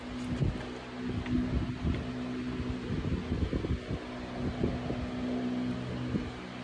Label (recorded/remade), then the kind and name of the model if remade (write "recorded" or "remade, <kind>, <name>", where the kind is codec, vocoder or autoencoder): recorded